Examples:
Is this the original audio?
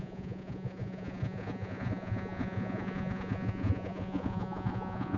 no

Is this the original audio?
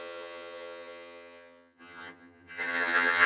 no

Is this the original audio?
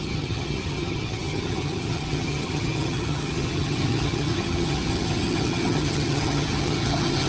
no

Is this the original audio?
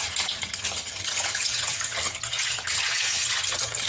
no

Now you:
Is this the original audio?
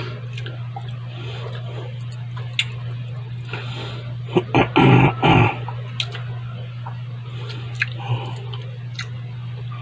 yes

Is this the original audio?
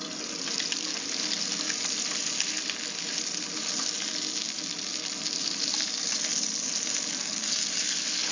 yes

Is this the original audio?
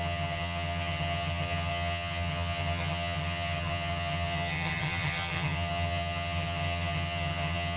no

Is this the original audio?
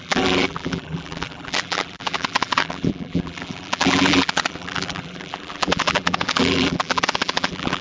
no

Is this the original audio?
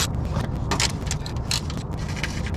yes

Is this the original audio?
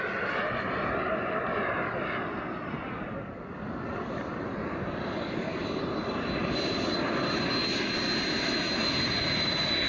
yes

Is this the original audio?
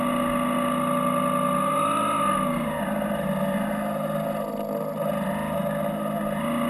yes